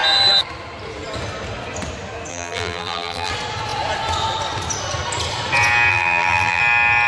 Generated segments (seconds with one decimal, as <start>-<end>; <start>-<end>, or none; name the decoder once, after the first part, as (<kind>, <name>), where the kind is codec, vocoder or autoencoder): 2.3-3.3 (vocoder, BigVGAN v2); 5.9-6.6

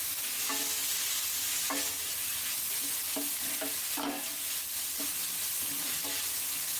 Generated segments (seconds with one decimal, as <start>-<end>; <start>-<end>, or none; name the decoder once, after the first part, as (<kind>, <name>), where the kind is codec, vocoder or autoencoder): none

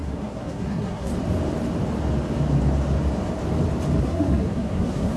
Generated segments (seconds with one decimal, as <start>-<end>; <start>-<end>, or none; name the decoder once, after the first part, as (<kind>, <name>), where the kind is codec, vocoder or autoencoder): 0.0-1.1 (codec, SNAC); 4.0-5.2

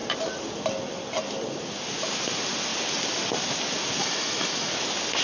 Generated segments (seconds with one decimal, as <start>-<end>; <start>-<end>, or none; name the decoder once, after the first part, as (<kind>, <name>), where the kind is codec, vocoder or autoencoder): 4.0-4.7 (autoencoder, DAC-VAE)